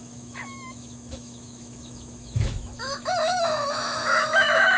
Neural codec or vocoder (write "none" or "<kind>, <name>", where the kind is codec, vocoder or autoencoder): autoencoder, DAC-VAE